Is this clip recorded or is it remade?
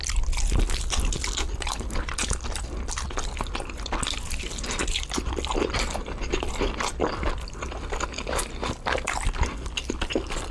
recorded